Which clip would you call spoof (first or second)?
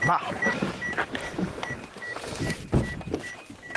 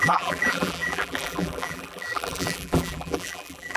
second